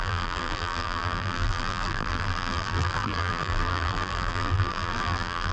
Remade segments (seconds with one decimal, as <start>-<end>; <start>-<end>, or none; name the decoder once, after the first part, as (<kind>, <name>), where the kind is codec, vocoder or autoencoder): 0.0-5.5 (vocoder, BigVGAN v2)